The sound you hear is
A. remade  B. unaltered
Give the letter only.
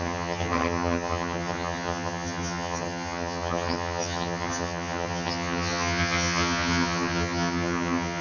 A